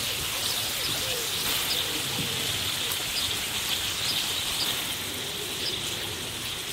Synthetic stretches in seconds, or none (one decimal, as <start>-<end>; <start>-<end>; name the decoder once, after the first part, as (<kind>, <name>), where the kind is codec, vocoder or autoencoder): none